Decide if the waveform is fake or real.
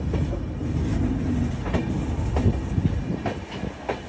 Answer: real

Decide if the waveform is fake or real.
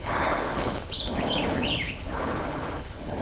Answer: fake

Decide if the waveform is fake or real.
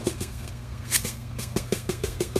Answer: fake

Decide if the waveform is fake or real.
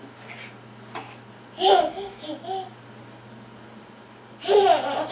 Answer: real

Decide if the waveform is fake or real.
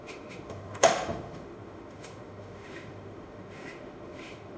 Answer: fake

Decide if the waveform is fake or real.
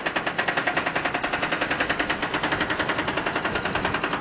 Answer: real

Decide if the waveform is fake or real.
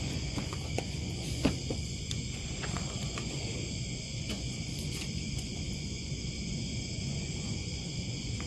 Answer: fake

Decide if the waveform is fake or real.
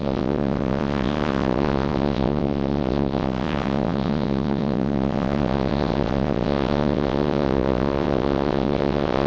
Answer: fake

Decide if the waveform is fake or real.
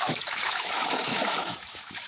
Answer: fake